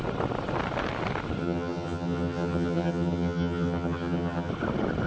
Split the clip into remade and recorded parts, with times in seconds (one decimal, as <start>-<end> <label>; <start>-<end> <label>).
0.0-1.4 recorded; 1.4-4.5 remade; 4.5-5.1 recorded